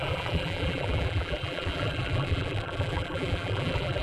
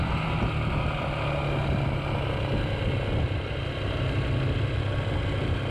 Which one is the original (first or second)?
second